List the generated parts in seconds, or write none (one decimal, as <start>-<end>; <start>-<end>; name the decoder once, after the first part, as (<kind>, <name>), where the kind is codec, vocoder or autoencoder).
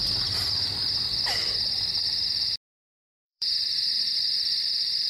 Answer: 3.2-4.1 (vocoder, BigVGAN v2)